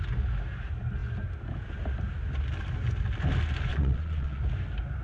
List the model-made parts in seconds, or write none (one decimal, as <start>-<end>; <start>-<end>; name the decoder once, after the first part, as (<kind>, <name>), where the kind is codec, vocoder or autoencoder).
3.7-4.4 (vocoder, Vocos)